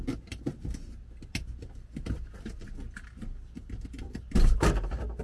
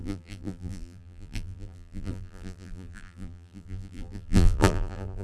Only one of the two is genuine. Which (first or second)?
first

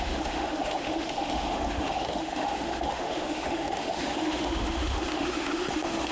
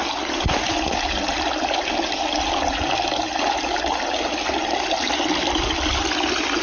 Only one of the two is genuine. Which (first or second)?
second